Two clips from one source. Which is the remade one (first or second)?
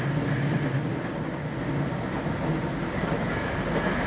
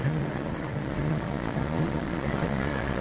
second